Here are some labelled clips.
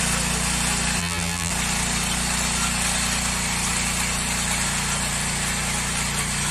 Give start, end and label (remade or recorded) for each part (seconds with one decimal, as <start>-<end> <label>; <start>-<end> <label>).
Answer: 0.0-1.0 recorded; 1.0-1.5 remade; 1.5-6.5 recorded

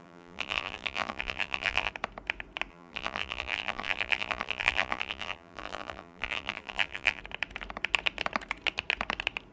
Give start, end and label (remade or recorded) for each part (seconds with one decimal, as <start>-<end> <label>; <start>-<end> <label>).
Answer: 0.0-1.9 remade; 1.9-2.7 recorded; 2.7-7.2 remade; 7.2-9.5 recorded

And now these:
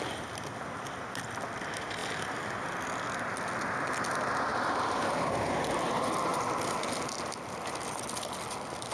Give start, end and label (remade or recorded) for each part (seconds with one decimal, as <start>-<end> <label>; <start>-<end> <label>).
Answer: 0.0-8.9 recorded

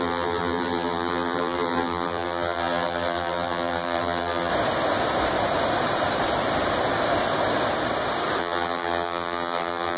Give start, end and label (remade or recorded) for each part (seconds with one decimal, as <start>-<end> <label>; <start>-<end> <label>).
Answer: 0.0-4.5 remade; 4.5-8.4 recorded; 8.4-10.0 remade